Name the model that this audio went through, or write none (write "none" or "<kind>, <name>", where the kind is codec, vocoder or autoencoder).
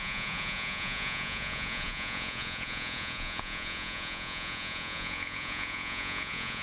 vocoder, Vocos